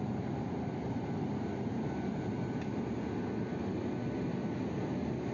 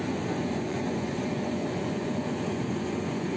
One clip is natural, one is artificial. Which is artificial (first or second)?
second